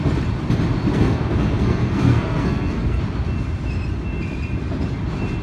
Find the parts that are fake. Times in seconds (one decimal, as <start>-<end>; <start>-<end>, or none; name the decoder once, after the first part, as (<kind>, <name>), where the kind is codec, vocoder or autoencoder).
0.9-3.0 (codec, SNAC)